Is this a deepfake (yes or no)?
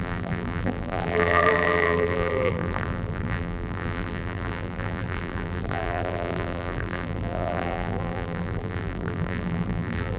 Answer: yes